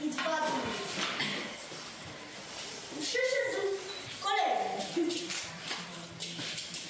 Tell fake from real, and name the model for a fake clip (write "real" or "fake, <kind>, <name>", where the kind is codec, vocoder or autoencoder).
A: real